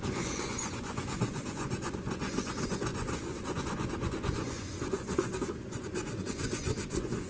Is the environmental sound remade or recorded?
remade